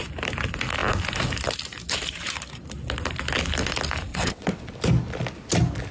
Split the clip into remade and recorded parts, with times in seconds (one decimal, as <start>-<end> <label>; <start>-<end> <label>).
0.0-4.1 recorded; 4.1-4.7 remade; 4.7-5.9 recorded